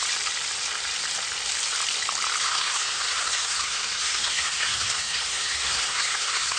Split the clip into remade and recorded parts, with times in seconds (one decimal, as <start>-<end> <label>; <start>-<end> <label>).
0.0-2.4 recorded; 2.4-6.6 remade